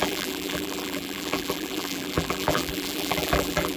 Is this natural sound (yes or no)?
no